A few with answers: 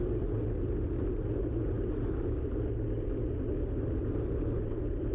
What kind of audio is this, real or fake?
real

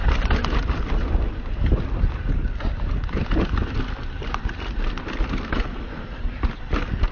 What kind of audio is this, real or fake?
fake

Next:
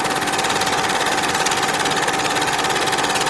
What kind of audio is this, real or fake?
real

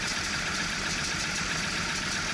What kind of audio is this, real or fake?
fake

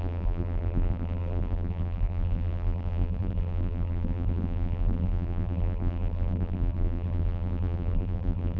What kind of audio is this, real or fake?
fake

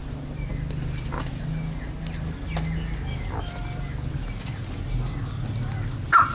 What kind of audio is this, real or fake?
real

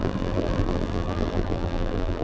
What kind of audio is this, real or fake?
fake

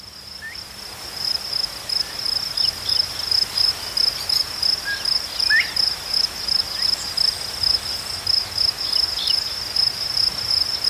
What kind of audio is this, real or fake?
real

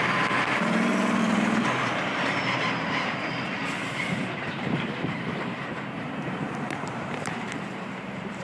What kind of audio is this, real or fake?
fake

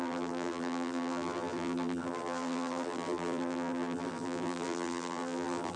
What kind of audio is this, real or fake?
fake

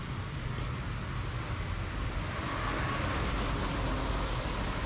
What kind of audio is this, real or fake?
real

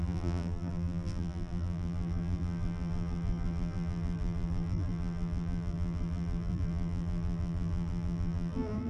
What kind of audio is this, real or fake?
fake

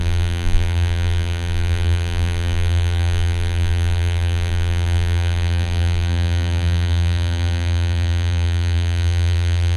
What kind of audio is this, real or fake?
fake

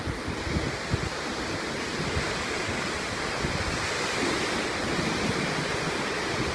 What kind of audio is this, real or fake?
real